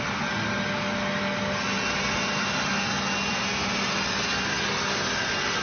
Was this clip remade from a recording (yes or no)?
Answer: no